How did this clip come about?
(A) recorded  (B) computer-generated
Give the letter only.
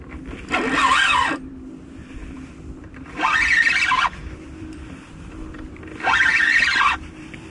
B